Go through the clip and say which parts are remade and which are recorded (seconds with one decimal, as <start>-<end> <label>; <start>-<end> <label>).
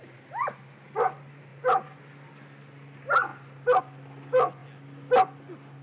0.0-1.5 recorded; 1.5-2.0 remade; 2.0-5.8 recorded